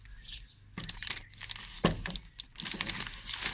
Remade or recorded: recorded